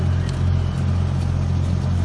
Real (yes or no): yes